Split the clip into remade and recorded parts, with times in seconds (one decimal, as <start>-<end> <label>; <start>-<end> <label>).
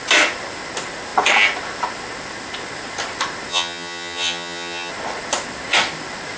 0.0-3.5 recorded; 3.5-4.9 remade; 4.9-6.4 recorded